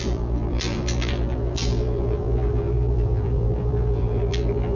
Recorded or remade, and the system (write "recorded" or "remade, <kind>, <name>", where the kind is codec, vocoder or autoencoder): remade, vocoder, BigVGAN v2